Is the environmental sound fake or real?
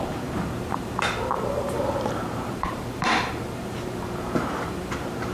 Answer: fake